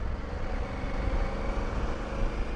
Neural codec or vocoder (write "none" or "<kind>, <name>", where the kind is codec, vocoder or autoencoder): none